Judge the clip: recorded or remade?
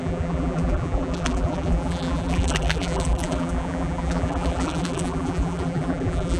remade